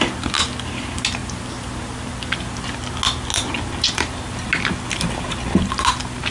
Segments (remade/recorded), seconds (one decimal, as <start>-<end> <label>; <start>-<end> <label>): 0.0-6.3 recorded